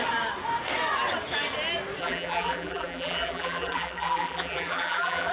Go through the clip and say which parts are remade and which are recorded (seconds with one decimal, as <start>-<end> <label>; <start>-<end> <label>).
0.0-2.0 recorded; 2.0-5.3 remade